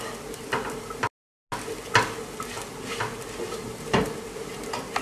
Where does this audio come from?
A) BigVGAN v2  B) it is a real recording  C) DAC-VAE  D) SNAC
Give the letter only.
B